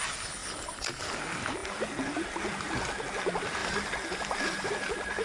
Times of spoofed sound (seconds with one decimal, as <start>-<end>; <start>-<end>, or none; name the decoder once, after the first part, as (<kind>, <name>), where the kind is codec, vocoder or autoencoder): 0.4-1.1 (vocoder, BigVGAN v2); 3.6-4.7